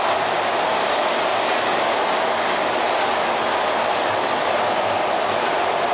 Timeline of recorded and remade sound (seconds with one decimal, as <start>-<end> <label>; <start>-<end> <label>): 0.0-5.9 recorded